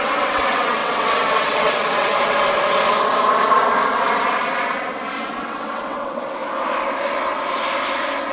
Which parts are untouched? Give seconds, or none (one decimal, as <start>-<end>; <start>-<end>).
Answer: 2.1-5.4; 6.4-8.3